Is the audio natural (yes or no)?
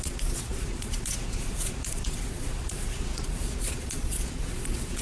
no